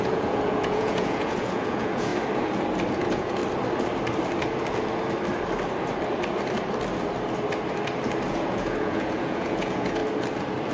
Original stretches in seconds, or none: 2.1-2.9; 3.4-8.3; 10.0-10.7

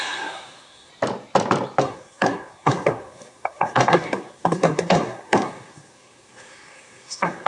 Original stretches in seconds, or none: 0.9-1.8

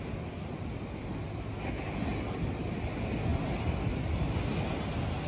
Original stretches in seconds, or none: 0.0-5.3

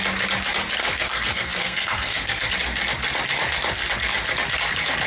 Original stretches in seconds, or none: 0.0-0.8; 2.5-5.1